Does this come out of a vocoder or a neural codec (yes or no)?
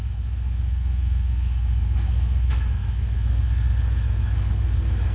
yes